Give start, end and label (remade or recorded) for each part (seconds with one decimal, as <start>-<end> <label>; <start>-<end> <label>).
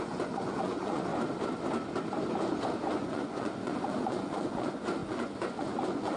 0.0-1.1 remade; 1.1-2.9 recorded; 2.9-6.2 remade